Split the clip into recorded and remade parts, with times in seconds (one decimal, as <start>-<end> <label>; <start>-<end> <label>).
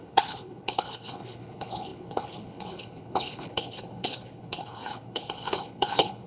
0.0-6.3 remade